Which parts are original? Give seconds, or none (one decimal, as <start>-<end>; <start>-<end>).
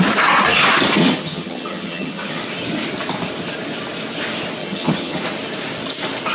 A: 0.0-1.0; 2.4-4.6; 5.2-6.3